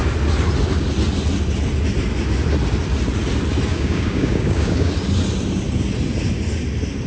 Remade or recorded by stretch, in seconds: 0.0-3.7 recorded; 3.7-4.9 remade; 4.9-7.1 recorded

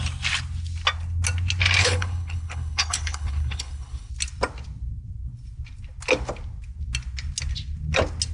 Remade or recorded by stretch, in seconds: 0.0-1.8 recorded; 1.8-4.1 remade; 4.1-8.3 recorded

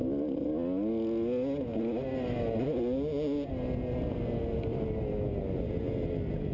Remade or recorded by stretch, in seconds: 0.0-6.5 recorded

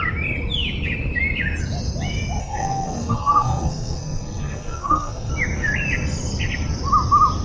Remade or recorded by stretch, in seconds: 0.0-2.4 recorded; 2.4-5.3 remade; 5.3-7.4 recorded

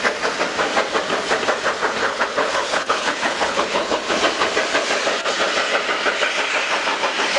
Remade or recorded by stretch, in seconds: 0.0-2.0 recorded; 2.0-4.2 remade; 4.2-7.4 recorded

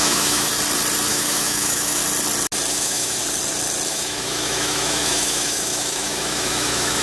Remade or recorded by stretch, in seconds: 0.0-0.5 remade; 0.5-1.1 recorded; 1.1-2.0 remade; 2.0-2.7 recorded; 2.7-3.2 remade; 3.2-3.9 recorded; 3.9-7.0 remade

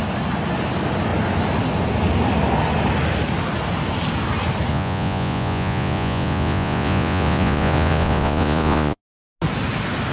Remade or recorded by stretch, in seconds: 0.0-4.7 recorded; 4.7-9.0 remade; 9.0-10.1 recorded

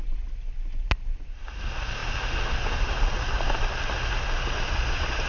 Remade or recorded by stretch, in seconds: 0.0-5.3 recorded